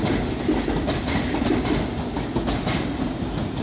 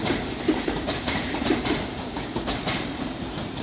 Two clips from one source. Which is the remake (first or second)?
second